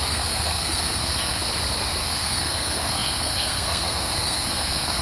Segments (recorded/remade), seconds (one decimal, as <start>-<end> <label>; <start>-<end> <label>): 0.0-1.4 remade; 1.4-2.0 recorded; 2.0-5.0 remade